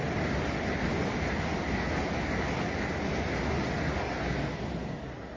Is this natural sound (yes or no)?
yes